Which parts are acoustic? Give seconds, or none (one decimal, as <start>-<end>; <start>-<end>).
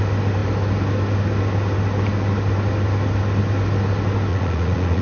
0.0-4.3